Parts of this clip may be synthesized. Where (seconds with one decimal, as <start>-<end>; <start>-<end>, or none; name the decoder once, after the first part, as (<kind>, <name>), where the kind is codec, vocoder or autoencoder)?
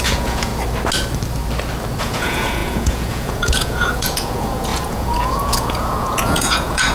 0.0-0.5 (vocoder, Vocos); 2.0-6.9